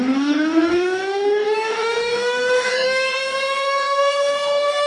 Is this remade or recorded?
remade